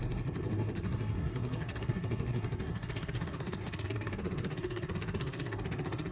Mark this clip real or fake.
fake